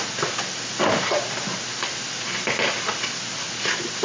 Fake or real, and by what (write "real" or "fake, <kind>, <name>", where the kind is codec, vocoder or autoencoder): real